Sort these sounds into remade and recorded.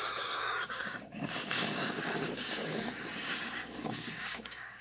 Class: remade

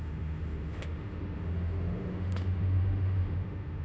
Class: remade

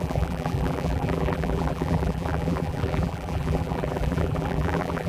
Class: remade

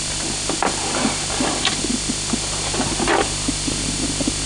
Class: recorded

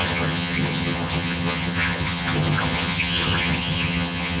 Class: remade